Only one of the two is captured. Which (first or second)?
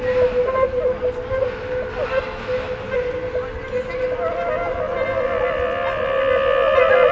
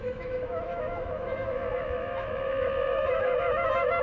first